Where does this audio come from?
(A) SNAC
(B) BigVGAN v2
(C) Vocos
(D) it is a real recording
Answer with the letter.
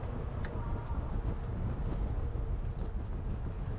D